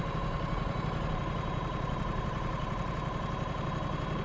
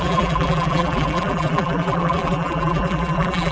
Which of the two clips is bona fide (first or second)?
first